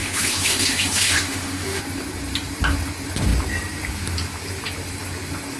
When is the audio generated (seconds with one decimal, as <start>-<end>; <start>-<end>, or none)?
0.0-1.8